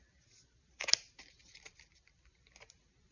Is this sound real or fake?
fake